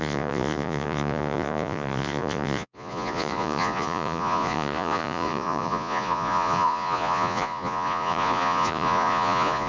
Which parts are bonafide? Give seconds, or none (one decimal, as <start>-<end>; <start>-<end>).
none